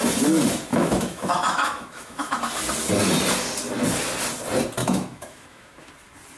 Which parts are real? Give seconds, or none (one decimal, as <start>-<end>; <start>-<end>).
0.0-0.7; 2.4-4.8; 5.9-6.4